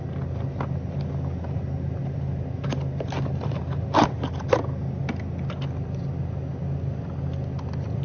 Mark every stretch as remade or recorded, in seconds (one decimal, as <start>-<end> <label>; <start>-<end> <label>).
0.0-8.0 recorded